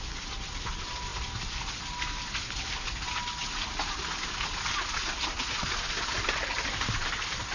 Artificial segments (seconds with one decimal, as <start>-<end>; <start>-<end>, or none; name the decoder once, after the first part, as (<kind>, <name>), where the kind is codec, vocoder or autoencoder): none